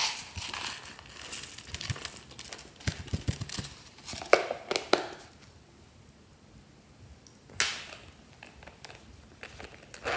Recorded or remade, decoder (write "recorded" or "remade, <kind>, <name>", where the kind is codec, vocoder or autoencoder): recorded